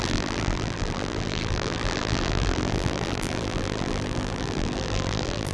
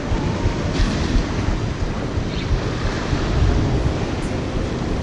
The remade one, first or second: first